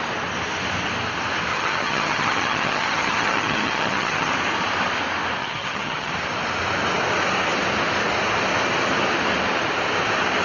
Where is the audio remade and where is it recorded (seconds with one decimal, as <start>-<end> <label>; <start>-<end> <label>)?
0.0-1.5 recorded; 1.5-4.3 remade; 4.3-5.4 recorded; 5.4-6.1 remade; 6.1-10.4 recorded